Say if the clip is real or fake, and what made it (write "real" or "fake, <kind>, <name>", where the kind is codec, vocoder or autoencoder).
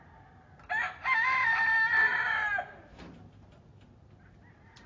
real